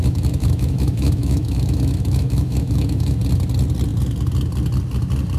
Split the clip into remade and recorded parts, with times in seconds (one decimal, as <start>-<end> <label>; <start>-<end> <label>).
0.0-3.2 remade; 3.2-5.4 recorded